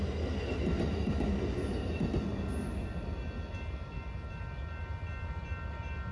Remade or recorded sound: recorded